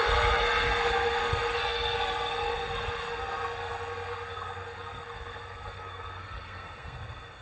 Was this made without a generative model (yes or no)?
no